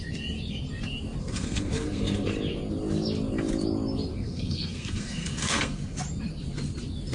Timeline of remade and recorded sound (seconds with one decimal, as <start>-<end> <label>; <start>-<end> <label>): 0.0-1.2 recorded; 1.2-2.3 remade; 2.3-4.1 recorded; 4.1-6.0 remade; 6.0-7.1 recorded